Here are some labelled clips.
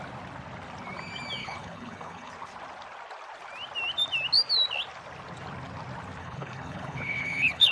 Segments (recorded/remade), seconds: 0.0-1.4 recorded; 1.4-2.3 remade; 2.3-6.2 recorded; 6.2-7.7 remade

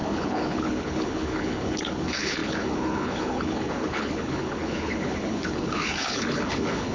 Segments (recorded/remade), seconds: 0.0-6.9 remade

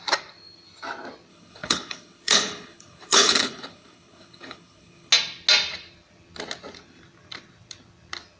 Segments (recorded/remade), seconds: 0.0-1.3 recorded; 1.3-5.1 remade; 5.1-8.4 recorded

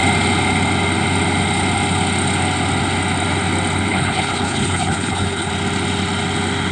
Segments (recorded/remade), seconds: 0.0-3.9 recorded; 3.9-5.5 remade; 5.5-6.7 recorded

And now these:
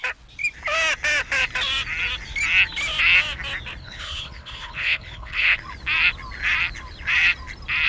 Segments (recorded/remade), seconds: 0.0-3.8 recorded; 3.8-5.6 remade; 5.6-7.9 recorded

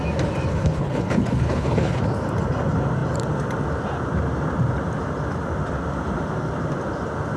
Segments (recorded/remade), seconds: 0.0-0.5 recorded; 0.5-2.0 remade; 2.0-7.4 recorded